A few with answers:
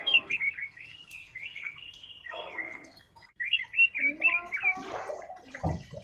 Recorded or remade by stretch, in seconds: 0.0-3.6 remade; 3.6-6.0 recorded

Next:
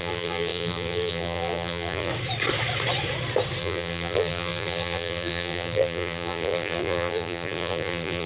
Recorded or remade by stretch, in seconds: 0.0-2.1 remade; 2.1-3.6 recorded; 3.6-8.3 remade

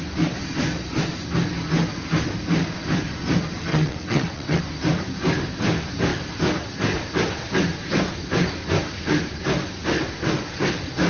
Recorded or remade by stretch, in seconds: 0.0-3.7 recorded; 3.7-4.6 remade; 4.6-11.1 recorded

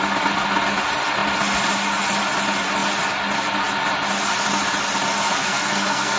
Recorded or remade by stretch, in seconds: 0.0-5.4 recorded; 5.4-6.2 remade

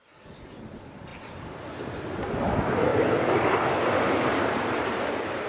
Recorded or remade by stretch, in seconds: 0.0-2.9 recorded; 2.9-3.7 remade; 3.7-4.3 recorded; 4.3-5.5 remade

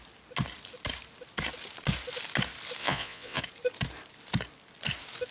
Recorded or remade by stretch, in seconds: 0.0-2.8 recorded; 2.8-3.4 remade; 3.4-5.3 recorded